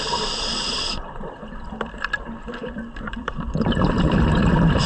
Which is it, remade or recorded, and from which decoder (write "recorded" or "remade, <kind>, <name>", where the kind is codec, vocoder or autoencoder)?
remade, vocoder, BigVGAN v2